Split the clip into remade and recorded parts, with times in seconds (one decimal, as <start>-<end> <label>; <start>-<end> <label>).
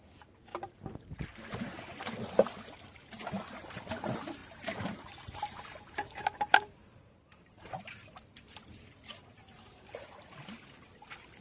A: 0.0-0.5 recorded; 0.5-1.8 remade; 1.8-4.4 recorded; 4.4-6.7 remade; 6.7-11.4 recorded